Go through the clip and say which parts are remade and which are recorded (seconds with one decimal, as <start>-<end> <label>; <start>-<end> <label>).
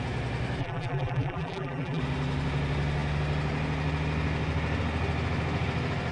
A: 0.0-0.6 recorded; 0.6-2.0 remade; 2.0-6.1 recorded